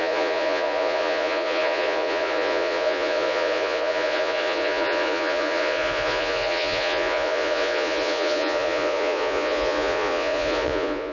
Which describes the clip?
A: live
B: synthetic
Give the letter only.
B